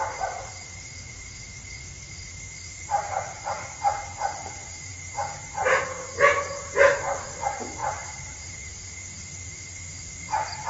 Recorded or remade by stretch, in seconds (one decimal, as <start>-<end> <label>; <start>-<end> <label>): 0.0-10.7 recorded